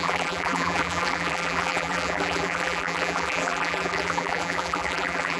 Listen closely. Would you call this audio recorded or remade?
remade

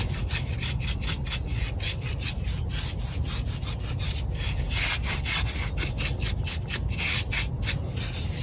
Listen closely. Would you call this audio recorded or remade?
recorded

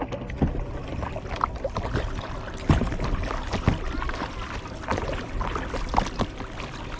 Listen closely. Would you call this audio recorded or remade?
recorded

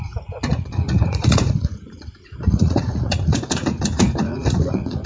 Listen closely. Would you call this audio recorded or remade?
remade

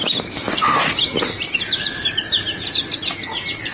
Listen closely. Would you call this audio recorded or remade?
recorded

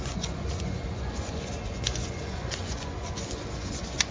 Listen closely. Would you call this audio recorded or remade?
remade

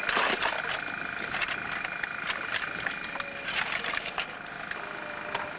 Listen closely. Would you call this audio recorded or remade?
recorded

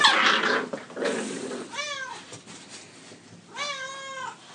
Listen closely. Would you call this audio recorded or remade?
recorded